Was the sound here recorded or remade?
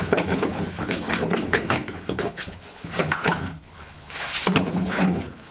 remade